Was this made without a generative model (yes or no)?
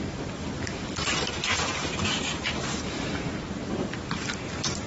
no